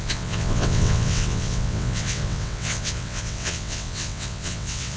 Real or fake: fake